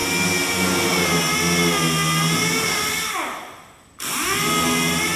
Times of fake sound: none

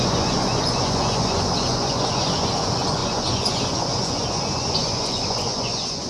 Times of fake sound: 0.0-6.1 (vocoder, Vocos)

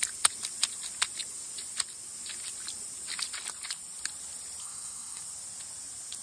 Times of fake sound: 4.6-5.2 (codec, SNAC)

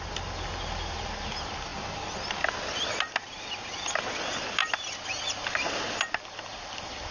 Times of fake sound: none

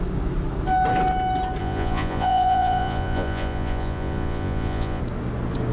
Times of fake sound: 1.6-5.0 (vocoder, Vocos)

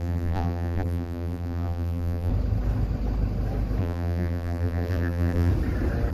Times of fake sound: 0.0-2.3 (vocoder, BigVGAN v2); 3.8-5.5

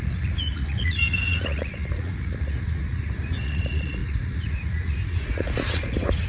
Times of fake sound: 0.0-6.3 (vocoder, Vocos)